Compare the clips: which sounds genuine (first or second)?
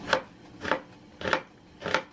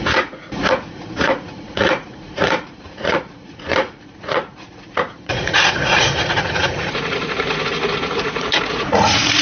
first